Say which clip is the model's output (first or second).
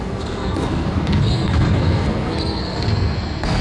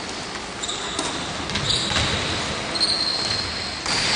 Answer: first